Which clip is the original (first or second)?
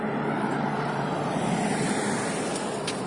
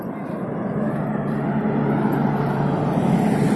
second